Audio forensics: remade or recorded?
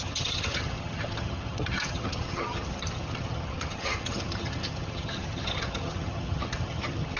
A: remade